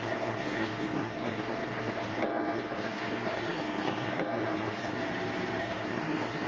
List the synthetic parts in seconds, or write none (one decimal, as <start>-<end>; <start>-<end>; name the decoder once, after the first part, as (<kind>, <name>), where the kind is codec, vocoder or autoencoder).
0.0-5.0 (codec, SNAC); 5.6-6.5